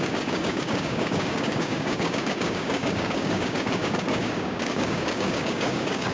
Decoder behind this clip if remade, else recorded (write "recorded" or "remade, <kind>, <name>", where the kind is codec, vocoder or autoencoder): remade, codec, DAC